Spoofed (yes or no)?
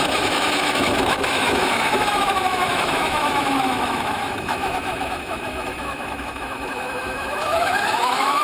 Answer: yes